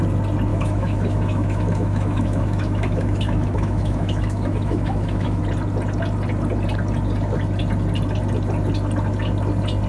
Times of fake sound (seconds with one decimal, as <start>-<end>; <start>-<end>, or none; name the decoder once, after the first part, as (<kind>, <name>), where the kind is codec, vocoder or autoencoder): 0.5-5.4 (autoencoder, DAC-VAE)